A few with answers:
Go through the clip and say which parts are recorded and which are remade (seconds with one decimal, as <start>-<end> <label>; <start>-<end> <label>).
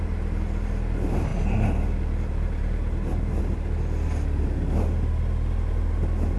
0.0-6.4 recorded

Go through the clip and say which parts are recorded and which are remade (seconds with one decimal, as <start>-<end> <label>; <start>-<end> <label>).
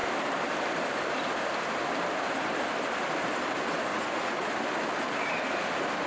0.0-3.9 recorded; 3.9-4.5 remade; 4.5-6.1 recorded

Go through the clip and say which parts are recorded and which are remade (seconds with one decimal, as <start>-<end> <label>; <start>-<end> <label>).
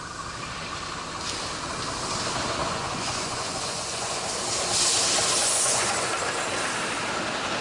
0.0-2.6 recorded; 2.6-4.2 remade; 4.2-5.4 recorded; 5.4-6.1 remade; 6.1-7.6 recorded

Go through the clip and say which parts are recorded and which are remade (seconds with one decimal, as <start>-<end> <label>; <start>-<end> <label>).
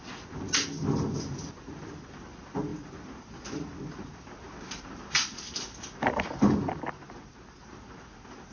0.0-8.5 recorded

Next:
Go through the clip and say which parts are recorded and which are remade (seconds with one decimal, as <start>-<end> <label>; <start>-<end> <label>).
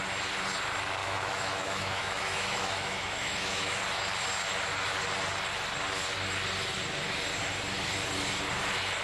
0.0-1.0 recorded; 1.0-3.8 remade; 3.8-9.0 recorded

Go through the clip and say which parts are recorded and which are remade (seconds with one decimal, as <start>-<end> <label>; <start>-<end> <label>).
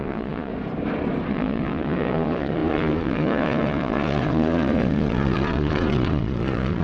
0.0-0.5 remade; 0.5-1.3 recorded; 1.3-6.8 remade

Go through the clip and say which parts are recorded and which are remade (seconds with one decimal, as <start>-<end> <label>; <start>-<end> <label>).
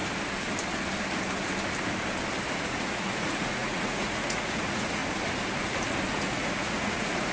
0.0-2.6 recorded; 2.6-5.0 remade; 5.0-6.1 recorded; 6.1-7.3 remade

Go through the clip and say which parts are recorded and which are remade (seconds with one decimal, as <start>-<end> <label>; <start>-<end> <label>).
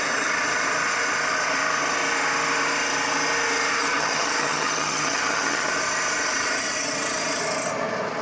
0.0-3.7 recorded; 3.7-5.7 remade; 5.7-8.2 recorded